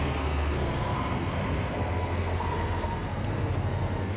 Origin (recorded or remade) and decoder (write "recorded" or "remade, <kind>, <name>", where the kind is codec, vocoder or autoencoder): remade, codec, SNAC